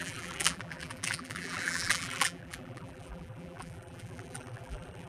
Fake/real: fake